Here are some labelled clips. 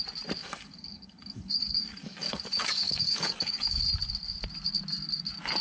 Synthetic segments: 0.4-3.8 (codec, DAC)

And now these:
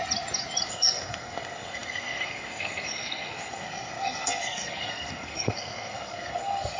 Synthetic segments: 0.7-6.8 (codec, SNAC)

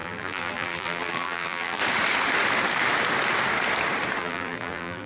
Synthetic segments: 0.0-1.8 (vocoder, BigVGAN v2); 4.2-5.1